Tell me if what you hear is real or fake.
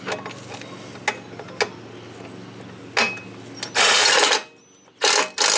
real